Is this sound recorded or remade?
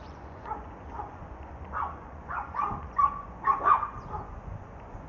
remade